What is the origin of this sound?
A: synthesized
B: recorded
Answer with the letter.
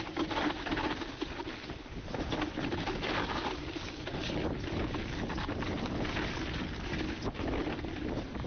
B